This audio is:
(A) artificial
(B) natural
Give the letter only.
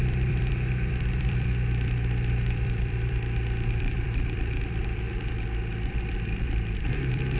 A